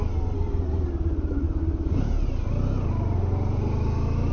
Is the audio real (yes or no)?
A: yes